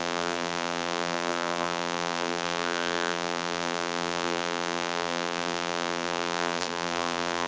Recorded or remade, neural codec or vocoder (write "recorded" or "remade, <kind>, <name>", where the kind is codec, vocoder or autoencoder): remade, vocoder, BigVGAN v2